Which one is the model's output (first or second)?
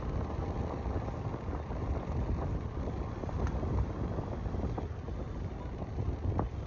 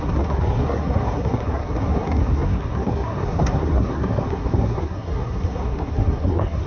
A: second